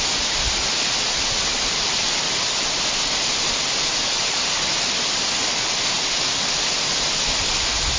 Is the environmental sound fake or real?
real